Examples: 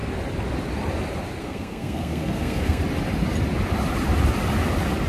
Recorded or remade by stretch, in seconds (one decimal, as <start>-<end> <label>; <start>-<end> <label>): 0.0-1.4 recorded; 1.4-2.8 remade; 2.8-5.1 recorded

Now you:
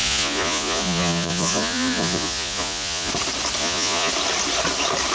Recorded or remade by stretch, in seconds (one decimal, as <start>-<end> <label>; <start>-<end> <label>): 0.0-3.1 remade; 3.1-3.6 recorded; 3.6-4.1 remade; 4.1-5.1 recorded

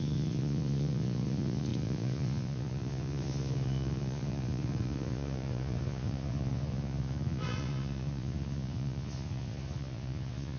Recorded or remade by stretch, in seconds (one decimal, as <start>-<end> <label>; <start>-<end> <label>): 0.0-10.6 remade